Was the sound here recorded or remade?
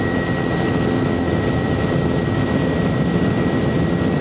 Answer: recorded